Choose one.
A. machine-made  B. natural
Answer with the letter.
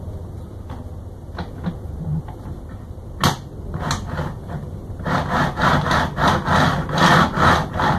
B